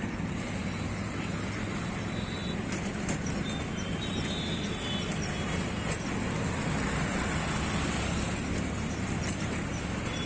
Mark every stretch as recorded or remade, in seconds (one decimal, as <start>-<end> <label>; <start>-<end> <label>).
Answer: 0.0-10.3 recorded